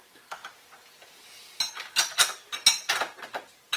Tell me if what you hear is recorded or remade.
recorded